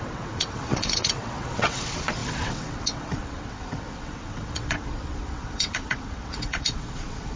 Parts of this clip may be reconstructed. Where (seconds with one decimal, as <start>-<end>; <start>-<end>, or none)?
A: 0.0-7.4